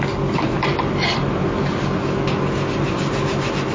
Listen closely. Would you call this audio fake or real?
real